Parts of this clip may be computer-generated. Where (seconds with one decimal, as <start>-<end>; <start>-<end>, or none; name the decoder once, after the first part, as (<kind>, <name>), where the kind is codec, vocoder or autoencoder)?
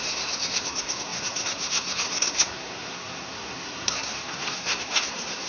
0.0-5.5 (codec, SNAC)